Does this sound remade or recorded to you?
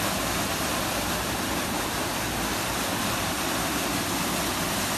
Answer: recorded